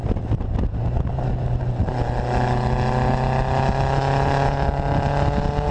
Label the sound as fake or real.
real